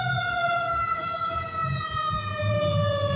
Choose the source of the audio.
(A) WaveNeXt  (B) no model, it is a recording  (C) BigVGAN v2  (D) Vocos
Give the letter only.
D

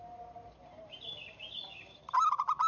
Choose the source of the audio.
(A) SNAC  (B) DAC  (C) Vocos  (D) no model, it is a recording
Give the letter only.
D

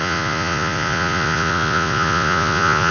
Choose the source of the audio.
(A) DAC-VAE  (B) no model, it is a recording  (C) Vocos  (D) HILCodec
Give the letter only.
C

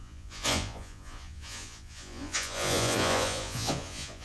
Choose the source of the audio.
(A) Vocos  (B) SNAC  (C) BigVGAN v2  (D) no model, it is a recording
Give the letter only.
A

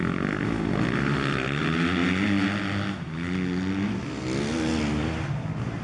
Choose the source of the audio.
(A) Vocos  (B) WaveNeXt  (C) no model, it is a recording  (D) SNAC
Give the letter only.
C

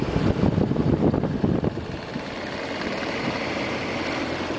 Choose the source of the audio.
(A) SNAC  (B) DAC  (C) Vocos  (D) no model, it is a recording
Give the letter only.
D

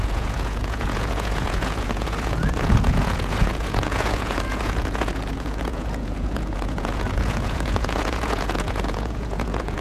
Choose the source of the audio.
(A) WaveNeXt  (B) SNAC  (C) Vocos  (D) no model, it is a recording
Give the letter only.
C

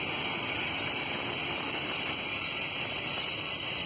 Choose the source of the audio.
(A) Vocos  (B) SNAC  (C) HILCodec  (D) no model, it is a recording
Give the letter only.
D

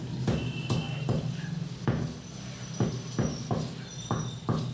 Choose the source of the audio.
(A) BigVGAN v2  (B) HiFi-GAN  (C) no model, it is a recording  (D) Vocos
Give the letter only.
C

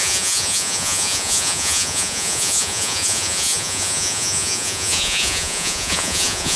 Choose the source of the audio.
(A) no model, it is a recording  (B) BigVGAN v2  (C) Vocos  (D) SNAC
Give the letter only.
C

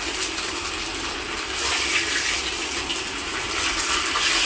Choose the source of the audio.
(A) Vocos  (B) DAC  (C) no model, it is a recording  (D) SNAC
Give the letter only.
C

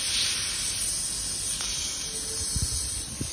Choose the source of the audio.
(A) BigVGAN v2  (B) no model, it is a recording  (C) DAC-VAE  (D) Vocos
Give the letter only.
B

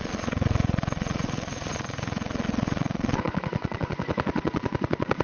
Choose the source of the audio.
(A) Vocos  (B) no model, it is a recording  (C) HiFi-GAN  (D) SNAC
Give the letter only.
A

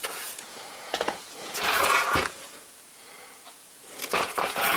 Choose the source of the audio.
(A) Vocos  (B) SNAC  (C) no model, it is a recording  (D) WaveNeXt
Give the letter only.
A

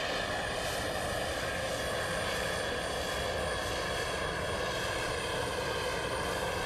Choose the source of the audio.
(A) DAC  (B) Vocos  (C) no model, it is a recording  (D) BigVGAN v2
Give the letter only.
C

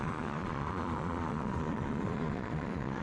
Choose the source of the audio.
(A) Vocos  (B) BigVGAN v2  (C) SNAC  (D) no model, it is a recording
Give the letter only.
A